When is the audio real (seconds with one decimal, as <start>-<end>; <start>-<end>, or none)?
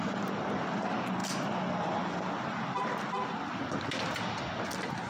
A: 0.0-5.1